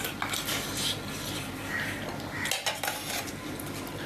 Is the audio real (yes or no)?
yes